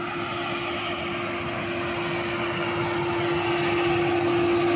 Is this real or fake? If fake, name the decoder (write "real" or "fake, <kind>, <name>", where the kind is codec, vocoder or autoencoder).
real